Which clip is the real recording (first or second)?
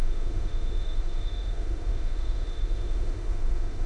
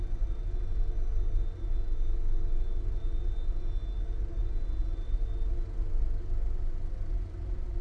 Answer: second